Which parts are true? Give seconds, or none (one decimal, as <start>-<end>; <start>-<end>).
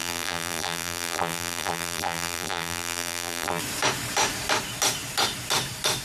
3.6-6.0